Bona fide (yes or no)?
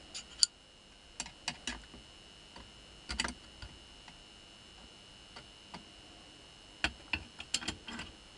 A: yes